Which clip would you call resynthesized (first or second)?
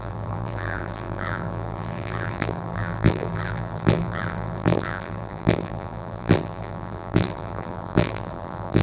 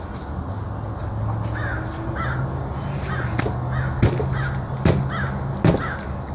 first